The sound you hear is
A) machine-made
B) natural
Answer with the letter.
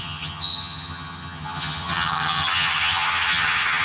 A